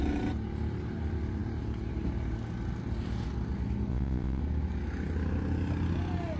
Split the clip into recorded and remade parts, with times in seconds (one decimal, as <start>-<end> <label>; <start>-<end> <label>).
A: 0.0-3.9 recorded; 3.9-4.4 remade; 4.4-6.4 recorded